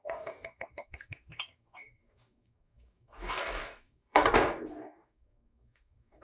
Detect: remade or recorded remade